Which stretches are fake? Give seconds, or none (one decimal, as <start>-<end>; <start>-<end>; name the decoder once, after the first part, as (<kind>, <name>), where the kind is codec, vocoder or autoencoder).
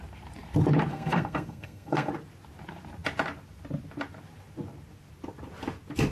0.9-2.1 (codec, SNAC)